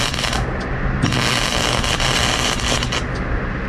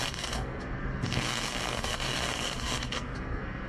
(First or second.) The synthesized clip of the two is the second